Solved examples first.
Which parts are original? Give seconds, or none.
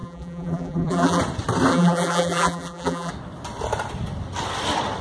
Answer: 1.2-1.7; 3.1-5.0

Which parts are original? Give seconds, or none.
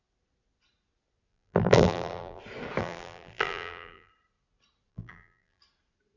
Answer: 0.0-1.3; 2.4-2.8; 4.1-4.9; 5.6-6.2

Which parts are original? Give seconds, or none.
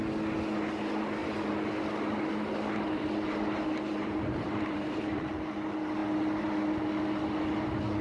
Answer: 0.0-3.9; 5.3-8.0